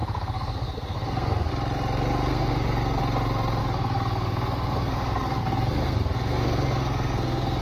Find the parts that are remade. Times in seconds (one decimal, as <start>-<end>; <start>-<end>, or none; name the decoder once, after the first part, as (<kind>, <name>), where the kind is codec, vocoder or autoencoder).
0.0-1.5 (codec, SNAC); 2.3-3.0; 3.6-7.6